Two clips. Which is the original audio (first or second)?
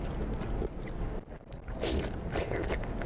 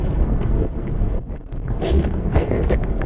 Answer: first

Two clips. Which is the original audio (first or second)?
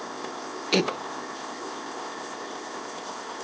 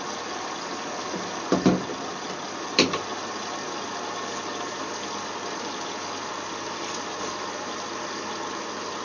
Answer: second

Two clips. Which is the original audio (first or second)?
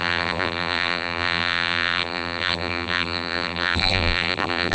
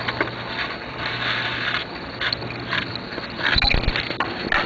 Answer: second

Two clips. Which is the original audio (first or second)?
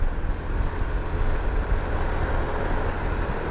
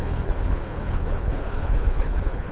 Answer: first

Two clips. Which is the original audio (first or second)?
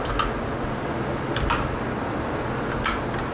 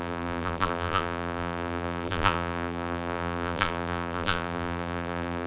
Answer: first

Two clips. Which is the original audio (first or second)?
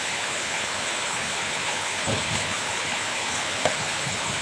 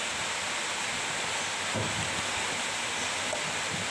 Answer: second